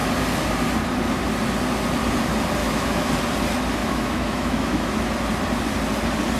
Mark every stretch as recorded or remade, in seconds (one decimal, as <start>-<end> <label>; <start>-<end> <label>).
0.0-2.6 recorded; 2.6-3.1 remade; 3.1-3.8 recorded; 3.8-5.1 remade; 5.1-6.4 recorded